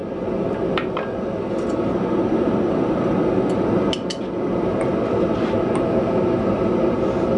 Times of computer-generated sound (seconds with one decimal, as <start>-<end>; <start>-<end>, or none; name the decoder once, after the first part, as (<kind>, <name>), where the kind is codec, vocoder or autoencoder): 0.0-3.1 (vocoder, BigVGAN v2)